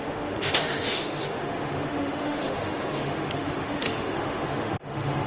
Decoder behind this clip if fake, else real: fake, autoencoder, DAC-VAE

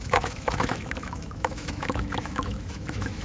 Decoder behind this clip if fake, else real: fake, autoencoder, DAC-VAE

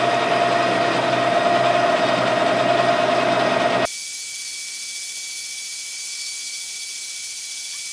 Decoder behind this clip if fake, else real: real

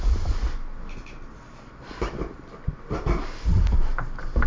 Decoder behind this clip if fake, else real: real